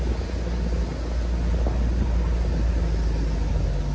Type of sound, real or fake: real